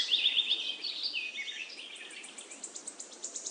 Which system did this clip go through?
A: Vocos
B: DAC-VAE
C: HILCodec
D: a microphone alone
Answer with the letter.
D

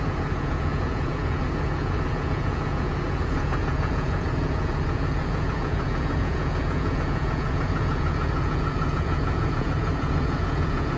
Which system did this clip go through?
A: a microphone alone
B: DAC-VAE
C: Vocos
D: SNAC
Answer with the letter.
C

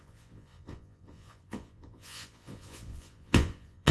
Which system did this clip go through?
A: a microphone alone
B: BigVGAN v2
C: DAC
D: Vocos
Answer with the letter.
D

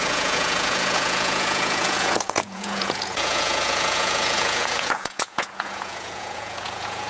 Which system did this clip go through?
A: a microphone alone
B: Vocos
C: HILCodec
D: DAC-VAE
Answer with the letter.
B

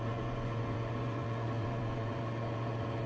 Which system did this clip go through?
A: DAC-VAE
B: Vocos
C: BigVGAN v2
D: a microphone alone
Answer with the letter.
B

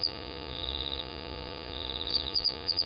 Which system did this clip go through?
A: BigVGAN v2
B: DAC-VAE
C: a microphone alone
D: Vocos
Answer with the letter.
D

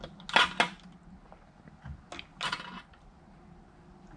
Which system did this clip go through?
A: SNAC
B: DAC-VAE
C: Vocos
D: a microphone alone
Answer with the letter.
D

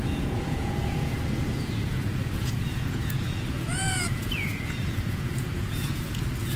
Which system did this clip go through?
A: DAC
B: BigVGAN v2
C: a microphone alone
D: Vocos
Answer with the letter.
D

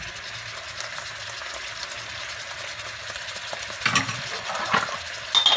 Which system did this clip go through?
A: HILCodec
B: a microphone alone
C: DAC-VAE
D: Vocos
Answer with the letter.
B